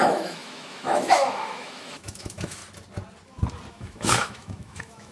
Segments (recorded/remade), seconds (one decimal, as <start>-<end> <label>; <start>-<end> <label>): 0.0-2.6 remade; 2.6-3.7 recorded; 3.7-5.1 remade